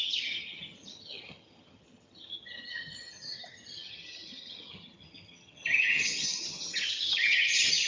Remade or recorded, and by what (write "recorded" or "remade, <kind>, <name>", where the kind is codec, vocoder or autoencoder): remade, vocoder, HiFi-GAN